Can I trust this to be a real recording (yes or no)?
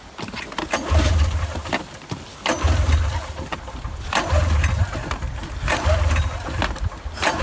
yes